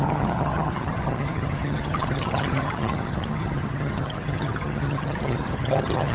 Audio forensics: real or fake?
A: fake